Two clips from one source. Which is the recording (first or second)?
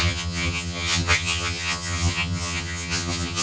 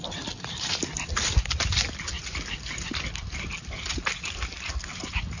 second